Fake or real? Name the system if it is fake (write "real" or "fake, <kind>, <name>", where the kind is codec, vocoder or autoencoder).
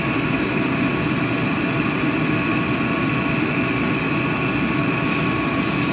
real